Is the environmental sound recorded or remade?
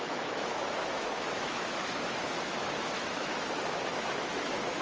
remade